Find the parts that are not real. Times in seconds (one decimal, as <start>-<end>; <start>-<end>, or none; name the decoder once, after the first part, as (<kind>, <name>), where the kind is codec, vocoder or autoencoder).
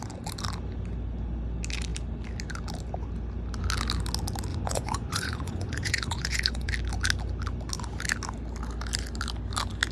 4.5-6.7 (vocoder, Vocos)